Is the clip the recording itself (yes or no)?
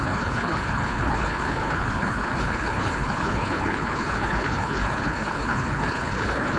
no